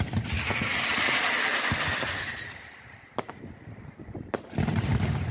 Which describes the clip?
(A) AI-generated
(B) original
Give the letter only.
B